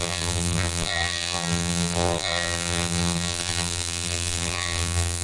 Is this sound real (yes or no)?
no